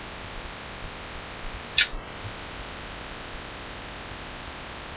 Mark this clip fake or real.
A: real